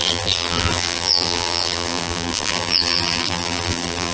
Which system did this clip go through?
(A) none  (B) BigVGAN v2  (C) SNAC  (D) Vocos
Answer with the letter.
B